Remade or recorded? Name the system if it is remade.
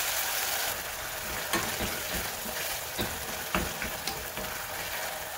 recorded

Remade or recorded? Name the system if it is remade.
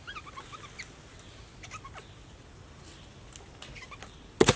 recorded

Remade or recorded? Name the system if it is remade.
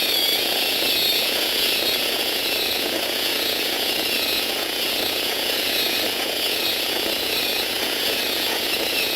remade, vocoder, Vocos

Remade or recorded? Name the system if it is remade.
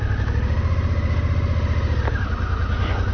recorded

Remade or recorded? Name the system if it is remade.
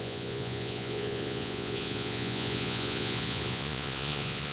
remade, vocoder, Vocos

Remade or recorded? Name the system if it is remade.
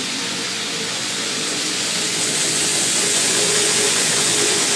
remade, vocoder, Vocos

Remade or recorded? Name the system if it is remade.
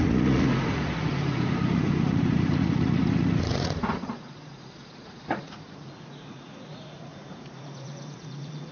remade, vocoder, Vocos